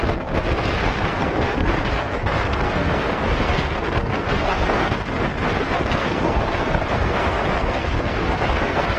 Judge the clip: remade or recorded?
remade